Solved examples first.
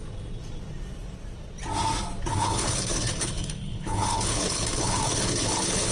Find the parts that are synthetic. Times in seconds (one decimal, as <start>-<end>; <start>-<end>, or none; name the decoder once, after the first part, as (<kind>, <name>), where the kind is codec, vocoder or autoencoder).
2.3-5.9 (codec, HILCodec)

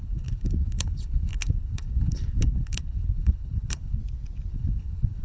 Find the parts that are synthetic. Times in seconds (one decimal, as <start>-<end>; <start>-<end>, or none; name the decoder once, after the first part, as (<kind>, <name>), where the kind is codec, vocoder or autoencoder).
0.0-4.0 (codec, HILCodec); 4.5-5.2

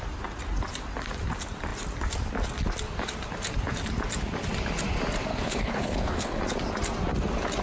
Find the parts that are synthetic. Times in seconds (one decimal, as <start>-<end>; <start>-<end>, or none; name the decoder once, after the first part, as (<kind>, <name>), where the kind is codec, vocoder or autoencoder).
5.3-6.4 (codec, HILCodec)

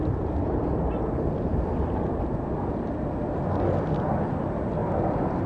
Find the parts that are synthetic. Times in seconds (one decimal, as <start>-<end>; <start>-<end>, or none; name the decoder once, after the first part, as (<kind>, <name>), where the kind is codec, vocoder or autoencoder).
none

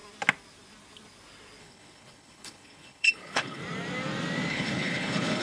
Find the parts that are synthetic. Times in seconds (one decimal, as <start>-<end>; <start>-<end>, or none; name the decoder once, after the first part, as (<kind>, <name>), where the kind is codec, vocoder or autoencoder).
1.6-3.6 (codec, HILCodec); 4.5-5.4

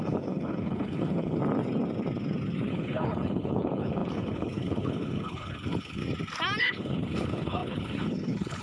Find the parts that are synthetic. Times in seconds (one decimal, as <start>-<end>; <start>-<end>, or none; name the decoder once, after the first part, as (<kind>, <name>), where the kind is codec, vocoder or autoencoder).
0.0-1.4 (codec, HILCodec); 2.7-6.0; 6.6-8.6

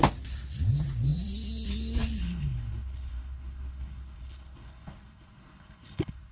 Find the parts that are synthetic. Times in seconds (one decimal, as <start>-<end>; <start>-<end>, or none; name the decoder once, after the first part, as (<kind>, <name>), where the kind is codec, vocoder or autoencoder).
2.2-6.3 (codec, HILCodec)

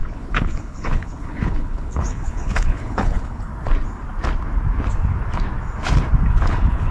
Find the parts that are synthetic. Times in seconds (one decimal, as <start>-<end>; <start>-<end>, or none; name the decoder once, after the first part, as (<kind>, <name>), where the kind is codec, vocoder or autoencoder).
0.0-3.5 (codec, HILCodec); 6.3-6.9